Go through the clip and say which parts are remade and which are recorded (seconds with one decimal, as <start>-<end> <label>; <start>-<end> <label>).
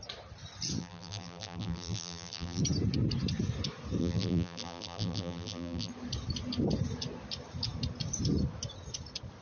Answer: 0.0-0.8 recorded; 0.8-2.6 remade; 2.6-4.0 recorded; 4.0-5.9 remade; 5.9-9.4 recorded